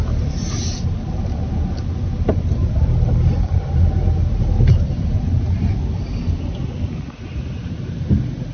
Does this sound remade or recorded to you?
recorded